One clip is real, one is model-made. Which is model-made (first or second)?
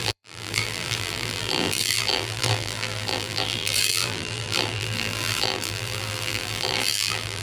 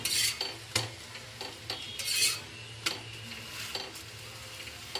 first